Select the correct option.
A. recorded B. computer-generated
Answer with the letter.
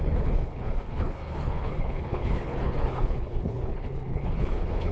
B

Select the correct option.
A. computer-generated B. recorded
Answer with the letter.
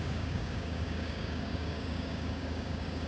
A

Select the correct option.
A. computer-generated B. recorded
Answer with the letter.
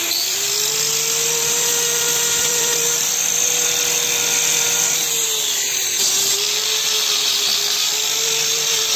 A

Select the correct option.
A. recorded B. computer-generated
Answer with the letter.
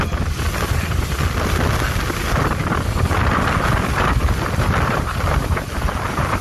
A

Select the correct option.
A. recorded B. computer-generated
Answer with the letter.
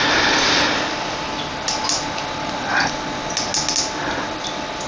A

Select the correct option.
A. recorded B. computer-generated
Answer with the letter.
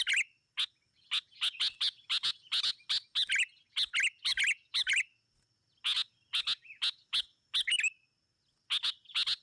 A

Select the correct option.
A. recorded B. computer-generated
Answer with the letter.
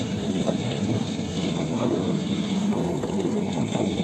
B